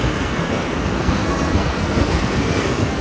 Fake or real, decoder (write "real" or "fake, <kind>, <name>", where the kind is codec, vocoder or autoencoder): fake, codec, SNAC